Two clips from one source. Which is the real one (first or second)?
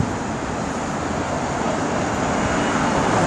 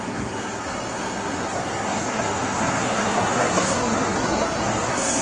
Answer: first